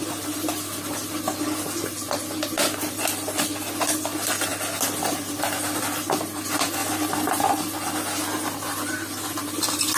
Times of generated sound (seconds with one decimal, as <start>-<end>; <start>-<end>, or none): none